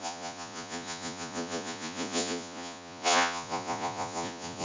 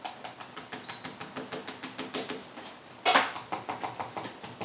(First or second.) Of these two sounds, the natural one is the second